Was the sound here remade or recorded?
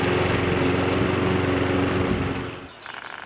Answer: recorded